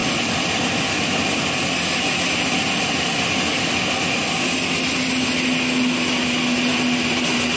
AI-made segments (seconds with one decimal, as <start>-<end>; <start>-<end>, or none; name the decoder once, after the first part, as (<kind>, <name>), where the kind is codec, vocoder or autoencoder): none